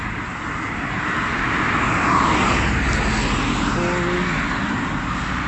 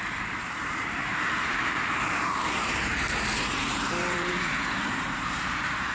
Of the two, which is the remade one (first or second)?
second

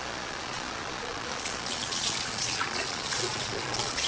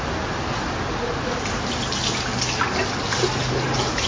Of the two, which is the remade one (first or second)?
first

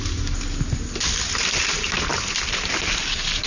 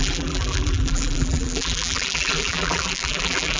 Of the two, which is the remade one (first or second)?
second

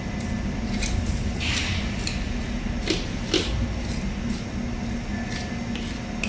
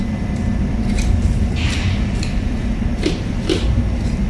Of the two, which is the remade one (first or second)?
second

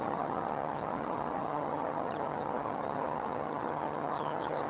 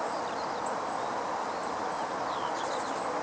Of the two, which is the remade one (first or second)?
first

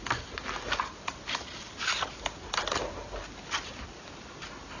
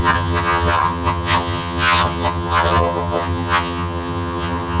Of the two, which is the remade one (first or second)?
second